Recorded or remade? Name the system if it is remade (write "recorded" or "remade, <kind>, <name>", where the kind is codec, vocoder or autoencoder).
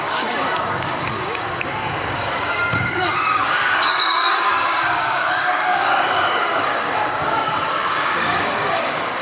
remade, codec, DAC